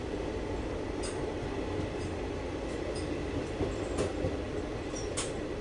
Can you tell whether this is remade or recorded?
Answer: recorded